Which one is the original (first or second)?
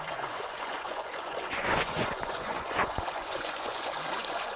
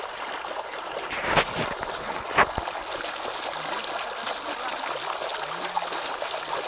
second